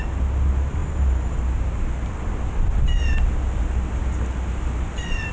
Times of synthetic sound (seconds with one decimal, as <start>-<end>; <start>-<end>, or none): none